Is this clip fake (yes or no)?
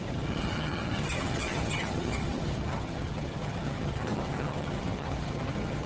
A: yes